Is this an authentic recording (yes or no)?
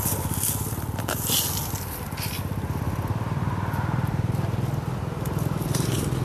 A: yes